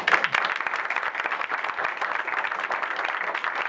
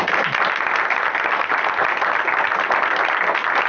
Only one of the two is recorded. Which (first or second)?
second